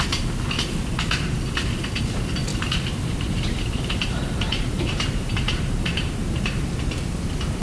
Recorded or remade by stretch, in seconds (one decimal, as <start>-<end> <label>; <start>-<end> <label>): 0.0-2.5 recorded; 2.5-6.7 remade; 6.7-7.6 recorded